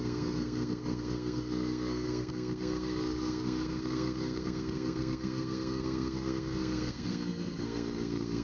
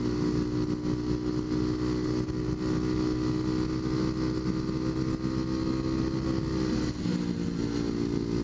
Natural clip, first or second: second